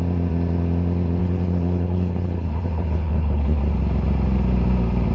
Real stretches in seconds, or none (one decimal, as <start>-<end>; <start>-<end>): 0.0-1.2; 3.6-5.1